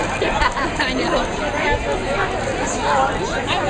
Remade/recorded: recorded